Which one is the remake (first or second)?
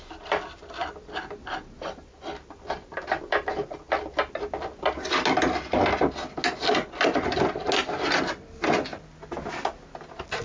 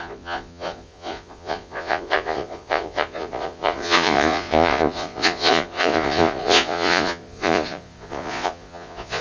second